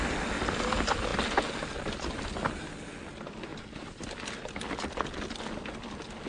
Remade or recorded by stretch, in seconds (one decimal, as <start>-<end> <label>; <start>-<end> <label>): 0.0-6.3 recorded